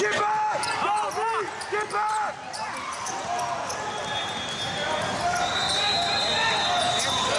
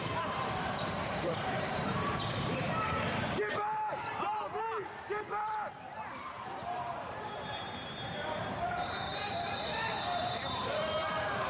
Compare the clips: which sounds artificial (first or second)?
second